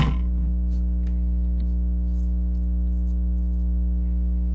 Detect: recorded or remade recorded